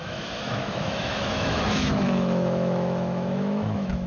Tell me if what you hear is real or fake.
fake